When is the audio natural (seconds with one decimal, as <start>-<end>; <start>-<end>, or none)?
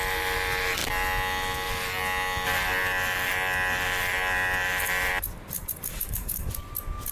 0.0-5.9; 6.5-7.1